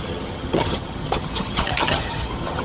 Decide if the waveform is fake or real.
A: fake